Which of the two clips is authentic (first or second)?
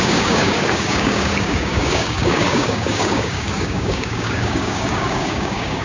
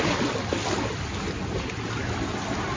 second